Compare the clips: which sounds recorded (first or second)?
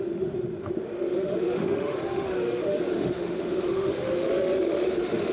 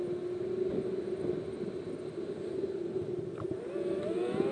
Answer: second